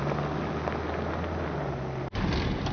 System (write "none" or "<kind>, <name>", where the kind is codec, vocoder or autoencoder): none